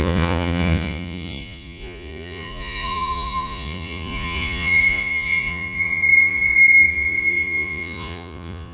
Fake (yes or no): yes